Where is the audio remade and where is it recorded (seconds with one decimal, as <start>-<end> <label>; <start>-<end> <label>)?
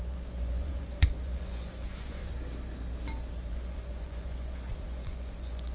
0.0-2.2 remade; 2.2-3.5 recorded; 3.5-5.7 remade